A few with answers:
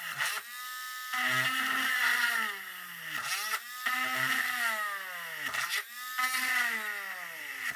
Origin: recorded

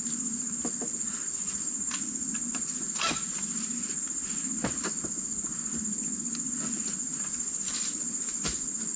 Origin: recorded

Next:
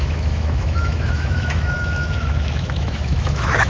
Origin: remade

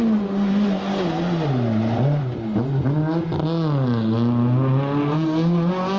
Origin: recorded